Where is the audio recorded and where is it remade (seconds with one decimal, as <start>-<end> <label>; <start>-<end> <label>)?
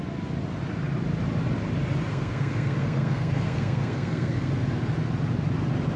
0.0-2.1 recorded; 2.1-4.5 remade; 4.5-6.0 recorded